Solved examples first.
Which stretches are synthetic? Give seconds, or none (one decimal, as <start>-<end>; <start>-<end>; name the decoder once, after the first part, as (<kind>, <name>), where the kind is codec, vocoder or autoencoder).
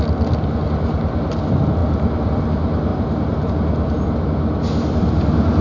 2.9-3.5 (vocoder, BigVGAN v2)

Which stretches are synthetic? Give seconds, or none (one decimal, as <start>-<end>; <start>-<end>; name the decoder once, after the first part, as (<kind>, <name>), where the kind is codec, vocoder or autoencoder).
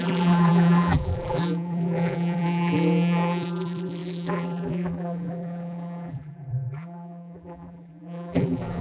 0.0-8.8 (vocoder, BigVGAN v2)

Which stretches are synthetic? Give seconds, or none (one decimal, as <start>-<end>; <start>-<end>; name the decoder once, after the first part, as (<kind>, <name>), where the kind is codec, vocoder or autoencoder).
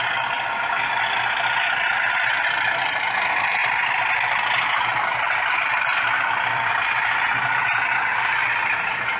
3.6-6.7 (vocoder, BigVGAN v2)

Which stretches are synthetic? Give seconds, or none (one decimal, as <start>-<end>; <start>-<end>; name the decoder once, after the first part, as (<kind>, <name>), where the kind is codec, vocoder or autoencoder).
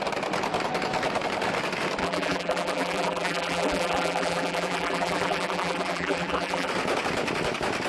2.0-6.7 (vocoder, BigVGAN v2)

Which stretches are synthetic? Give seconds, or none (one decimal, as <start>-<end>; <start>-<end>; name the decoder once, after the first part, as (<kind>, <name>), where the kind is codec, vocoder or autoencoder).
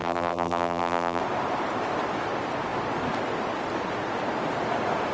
0.0-1.2 (vocoder, BigVGAN v2)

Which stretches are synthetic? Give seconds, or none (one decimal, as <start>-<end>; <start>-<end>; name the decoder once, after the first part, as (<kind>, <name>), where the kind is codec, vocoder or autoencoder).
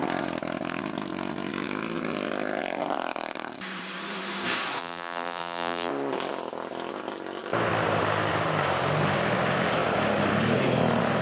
4.8-5.9 (vocoder, BigVGAN v2)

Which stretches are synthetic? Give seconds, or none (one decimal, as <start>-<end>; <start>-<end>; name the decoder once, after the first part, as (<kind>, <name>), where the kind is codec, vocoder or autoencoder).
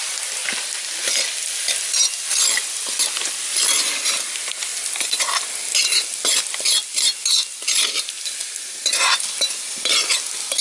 none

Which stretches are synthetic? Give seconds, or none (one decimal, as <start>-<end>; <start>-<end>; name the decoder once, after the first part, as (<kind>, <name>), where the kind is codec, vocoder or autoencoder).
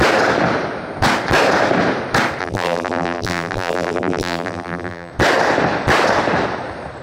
2.4-5.1 (vocoder, BigVGAN v2)